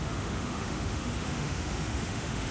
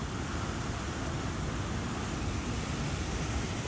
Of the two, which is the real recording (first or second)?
second